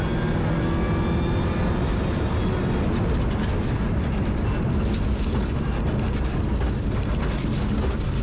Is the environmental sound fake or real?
real